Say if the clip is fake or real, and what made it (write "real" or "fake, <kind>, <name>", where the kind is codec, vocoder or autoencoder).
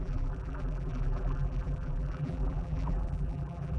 fake, vocoder, BigVGAN v2